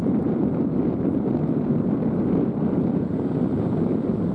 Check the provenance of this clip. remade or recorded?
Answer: recorded